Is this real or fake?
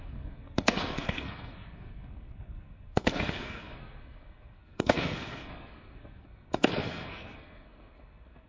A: fake